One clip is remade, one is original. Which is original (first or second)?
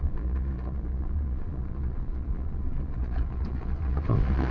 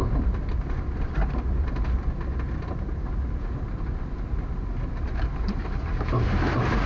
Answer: second